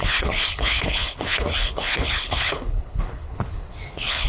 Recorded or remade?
remade